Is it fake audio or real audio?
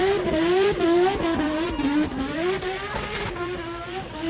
fake